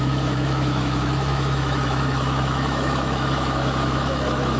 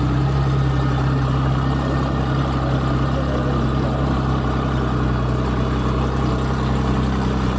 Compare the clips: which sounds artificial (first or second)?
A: first